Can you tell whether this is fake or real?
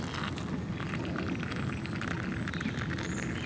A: real